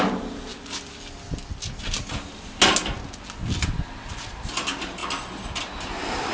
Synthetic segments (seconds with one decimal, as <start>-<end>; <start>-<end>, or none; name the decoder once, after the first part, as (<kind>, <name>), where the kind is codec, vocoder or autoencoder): 0.0-0.5 (vocoder, BigVGAN v2); 4.3-6.3